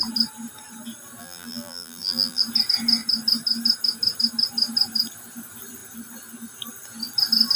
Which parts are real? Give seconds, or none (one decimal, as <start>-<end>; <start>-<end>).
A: 0.0-1.2; 2.4-7.6